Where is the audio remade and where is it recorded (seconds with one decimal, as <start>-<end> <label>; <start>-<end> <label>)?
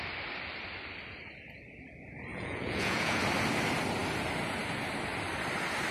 0.0-2.3 recorded; 2.3-3.2 remade; 3.2-5.9 recorded